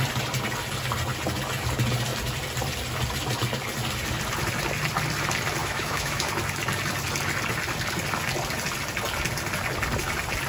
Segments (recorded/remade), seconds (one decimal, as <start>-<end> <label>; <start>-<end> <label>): 0.0-5.6 recorded; 5.6-6.3 remade; 6.3-10.5 recorded